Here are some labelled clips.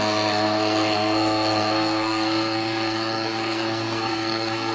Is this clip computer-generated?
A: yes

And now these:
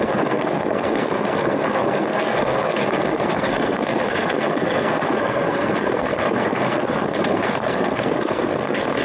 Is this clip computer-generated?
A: yes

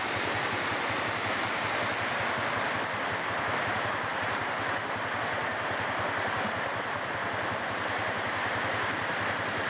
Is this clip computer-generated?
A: no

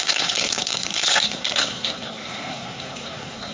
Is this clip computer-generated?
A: yes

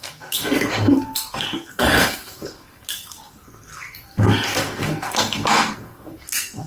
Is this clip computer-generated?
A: yes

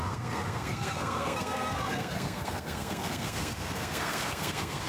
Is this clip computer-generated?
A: yes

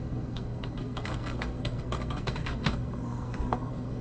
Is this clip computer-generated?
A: yes